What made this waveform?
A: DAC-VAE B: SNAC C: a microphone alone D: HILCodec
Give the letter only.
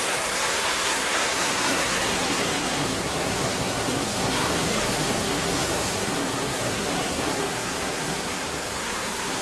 B